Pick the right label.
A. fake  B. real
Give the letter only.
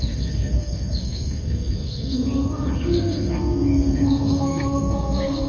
A